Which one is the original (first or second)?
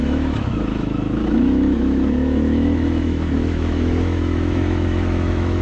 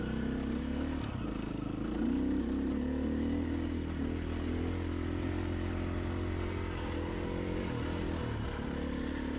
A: second